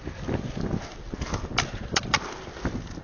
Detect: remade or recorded recorded